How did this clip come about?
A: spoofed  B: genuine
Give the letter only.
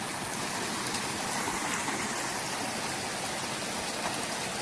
B